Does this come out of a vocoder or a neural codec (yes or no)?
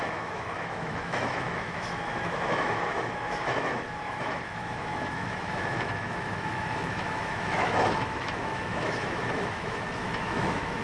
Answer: yes